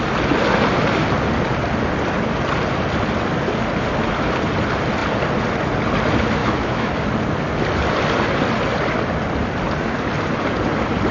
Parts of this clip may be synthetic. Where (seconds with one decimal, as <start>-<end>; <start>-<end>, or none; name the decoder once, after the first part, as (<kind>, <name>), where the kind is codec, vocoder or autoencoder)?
6.4-6.9 (autoencoder, DAC-VAE)

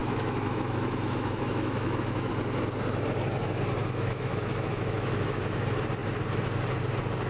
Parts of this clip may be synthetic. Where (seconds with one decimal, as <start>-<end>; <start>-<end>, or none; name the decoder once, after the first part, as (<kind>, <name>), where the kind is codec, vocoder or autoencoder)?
0.0-2.3 (autoencoder, DAC-VAE); 3.8-5.4

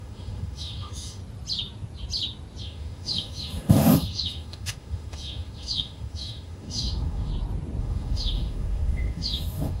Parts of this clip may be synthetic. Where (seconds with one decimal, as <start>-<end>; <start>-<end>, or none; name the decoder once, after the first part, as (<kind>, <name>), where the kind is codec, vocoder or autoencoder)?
0.0-1.2 (autoencoder, DAC-VAE); 2.6-7.3; 7.8-9.8

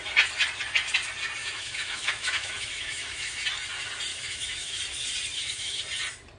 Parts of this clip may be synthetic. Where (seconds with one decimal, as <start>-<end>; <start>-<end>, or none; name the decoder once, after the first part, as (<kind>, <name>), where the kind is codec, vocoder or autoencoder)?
1.4-3.4 (autoencoder, DAC-VAE); 4.1-4.8; 5.3-5.8

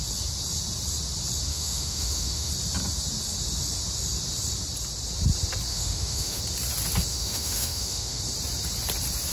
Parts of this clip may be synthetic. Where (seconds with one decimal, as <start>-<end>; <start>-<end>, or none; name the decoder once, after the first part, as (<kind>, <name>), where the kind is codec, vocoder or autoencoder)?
1.5-2.5 (autoencoder, DAC-VAE); 5.7-6.4; 7.1-8.2

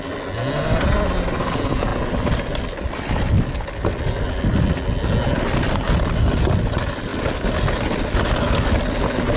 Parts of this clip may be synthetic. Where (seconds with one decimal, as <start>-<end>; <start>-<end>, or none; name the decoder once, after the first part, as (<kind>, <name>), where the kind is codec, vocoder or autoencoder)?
none